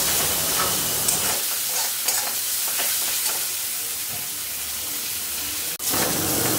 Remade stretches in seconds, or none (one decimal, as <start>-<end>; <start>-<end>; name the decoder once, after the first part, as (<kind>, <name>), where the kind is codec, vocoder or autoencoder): none